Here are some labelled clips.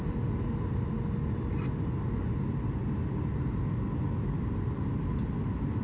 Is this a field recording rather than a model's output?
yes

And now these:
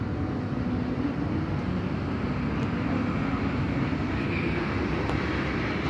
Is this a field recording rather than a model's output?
yes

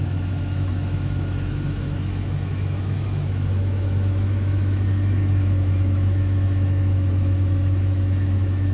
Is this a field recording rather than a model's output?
no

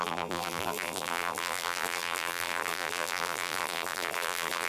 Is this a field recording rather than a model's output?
no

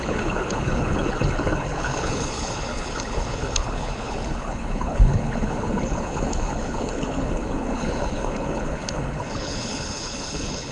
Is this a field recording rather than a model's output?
no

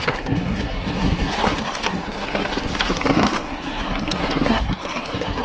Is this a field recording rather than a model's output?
no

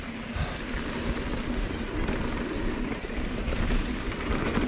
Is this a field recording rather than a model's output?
yes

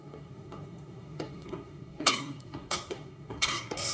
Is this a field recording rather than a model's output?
no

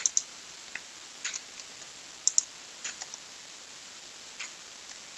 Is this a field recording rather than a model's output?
yes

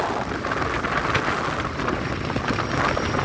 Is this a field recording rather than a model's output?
yes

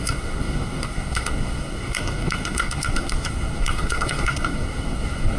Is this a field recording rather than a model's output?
no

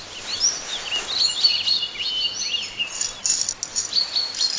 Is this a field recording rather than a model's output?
yes